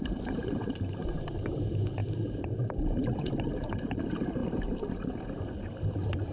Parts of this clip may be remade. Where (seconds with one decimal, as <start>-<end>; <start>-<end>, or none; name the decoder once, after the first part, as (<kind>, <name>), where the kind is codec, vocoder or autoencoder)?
0.0-4.4 (vocoder, BigVGAN v2)